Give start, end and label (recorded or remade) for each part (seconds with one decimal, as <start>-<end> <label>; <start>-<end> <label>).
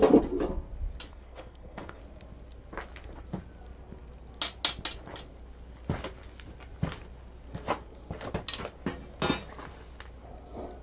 0.0-1.1 recorded; 1.1-2.0 remade; 2.0-10.8 recorded